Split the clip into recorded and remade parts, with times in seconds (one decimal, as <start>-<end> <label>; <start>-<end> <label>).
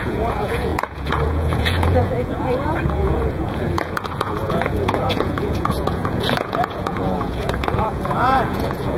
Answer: 0.0-9.0 remade